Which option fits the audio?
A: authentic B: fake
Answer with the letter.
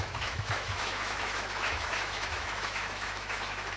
B